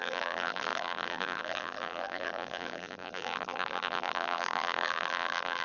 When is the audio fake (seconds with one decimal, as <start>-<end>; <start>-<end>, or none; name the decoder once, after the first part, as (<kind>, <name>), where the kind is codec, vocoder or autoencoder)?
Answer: 0.0-5.6 (vocoder, BigVGAN v2)